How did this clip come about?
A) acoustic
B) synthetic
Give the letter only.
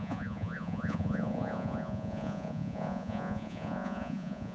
B